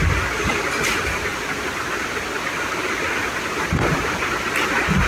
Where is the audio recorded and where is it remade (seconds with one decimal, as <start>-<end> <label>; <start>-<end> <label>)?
0.0-5.1 recorded